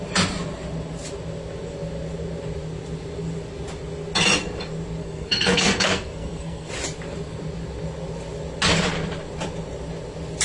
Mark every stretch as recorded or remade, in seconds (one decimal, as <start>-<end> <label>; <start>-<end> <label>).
0.0-5.0 recorded; 5.0-6.7 remade; 6.7-10.4 recorded